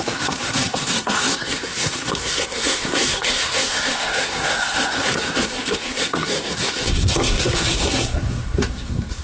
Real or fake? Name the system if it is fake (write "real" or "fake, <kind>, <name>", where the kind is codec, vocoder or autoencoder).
fake, codec, SNAC